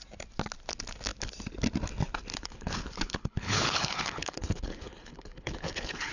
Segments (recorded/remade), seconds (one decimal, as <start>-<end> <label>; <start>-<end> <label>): 0.0-2.3 recorded; 2.3-6.1 remade